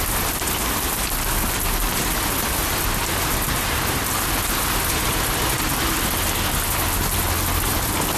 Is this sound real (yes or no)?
yes